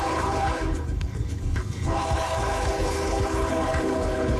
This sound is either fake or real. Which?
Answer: fake